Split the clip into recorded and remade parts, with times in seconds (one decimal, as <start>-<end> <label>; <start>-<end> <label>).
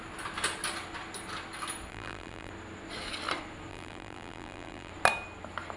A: 0.0-1.9 recorded; 1.9-2.5 remade; 2.5-3.7 recorded; 3.7-4.9 remade; 4.9-5.8 recorded